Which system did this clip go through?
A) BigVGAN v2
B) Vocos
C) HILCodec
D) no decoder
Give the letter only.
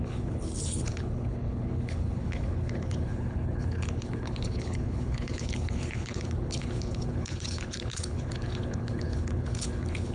C